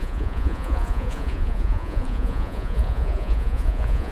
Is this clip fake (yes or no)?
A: yes